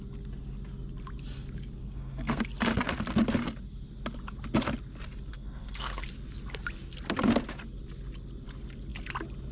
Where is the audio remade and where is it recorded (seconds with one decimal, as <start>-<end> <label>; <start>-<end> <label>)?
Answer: 0.0-1.8 recorded; 1.8-2.4 remade; 2.4-5.3 recorded; 5.3-6.0 remade; 6.0-9.5 recorded